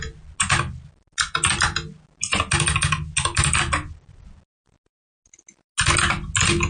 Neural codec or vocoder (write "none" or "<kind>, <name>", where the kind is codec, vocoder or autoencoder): none